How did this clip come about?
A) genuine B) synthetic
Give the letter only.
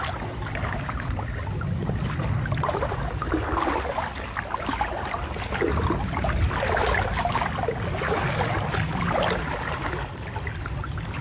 A